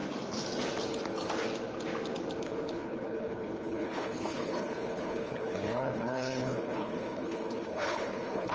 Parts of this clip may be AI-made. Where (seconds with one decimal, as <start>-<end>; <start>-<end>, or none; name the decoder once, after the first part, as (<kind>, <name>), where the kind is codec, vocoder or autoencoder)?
2.4-8.5 (codec, HILCodec)